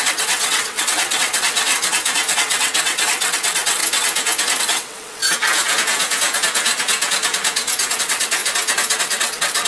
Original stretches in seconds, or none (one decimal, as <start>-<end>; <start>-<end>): 1.7-2.3; 3.8-4.6; 5.2-8.0; 8.4-9.0